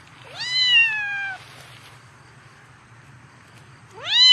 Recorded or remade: recorded